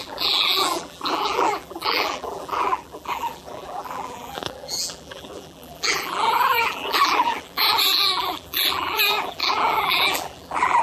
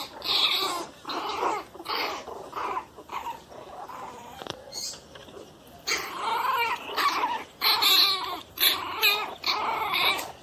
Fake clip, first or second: first